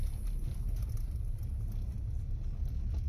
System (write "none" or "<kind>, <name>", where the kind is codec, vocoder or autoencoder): none